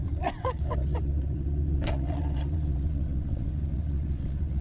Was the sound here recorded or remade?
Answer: remade